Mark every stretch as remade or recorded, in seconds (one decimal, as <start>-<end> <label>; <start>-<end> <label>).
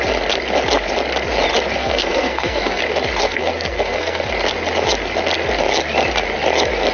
0.0-1.8 recorded; 1.8-2.8 remade; 2.8-3.2 recorded; 3.2-4.3 remade; 4.3-6.9 recorded